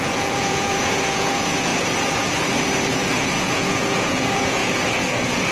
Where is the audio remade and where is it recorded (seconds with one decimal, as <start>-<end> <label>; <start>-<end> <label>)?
0.0-1.7 remade; 1.7-2.9 recorded; 2.9-5.5 remade